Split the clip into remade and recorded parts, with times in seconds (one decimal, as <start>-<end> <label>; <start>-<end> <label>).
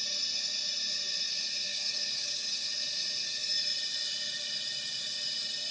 0.0-1.7 recorded; 1.7-2.7 remade; 2.7-5.7 recorded